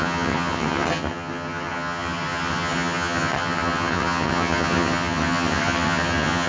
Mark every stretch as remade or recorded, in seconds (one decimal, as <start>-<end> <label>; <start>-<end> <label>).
0.0-6.5 remade